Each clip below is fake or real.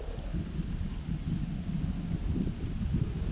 real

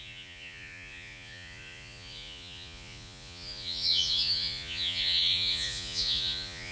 fake